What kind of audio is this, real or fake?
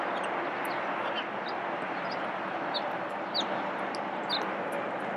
real